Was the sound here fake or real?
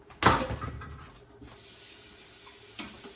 real